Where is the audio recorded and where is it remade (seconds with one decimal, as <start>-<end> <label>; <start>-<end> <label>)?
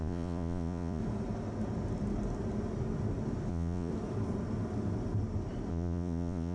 0.0-1.0 remade; 1.0-3.5 recorded; 3.5-3.9 remade; 3.9-5.7 recorded; 5.7-6.5 remade